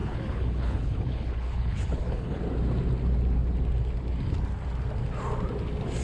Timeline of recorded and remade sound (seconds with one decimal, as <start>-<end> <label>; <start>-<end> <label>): 0.0-2.4 remade; 2.4-6.0 recorded